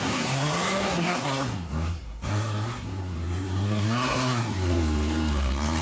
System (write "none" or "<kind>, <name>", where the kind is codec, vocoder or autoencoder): codec, SNAC